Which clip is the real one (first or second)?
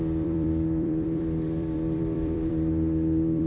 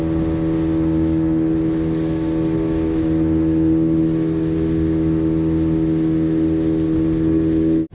second